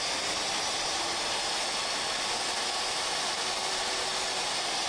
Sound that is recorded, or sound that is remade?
recorded